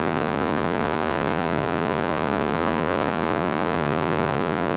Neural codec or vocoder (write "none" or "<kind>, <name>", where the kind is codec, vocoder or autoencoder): vocoder, Vocos